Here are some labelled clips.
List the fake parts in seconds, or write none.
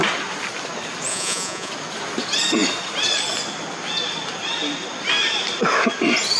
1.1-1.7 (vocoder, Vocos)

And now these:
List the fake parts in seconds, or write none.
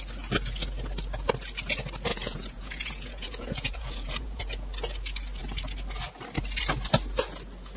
2.1-4.4 (vocoder, Vocos)